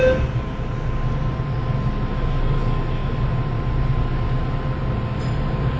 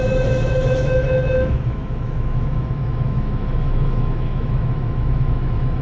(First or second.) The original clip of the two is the first